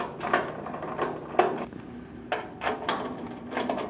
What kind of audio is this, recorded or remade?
recorded